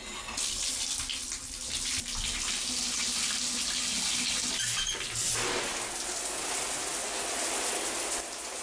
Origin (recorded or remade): recorded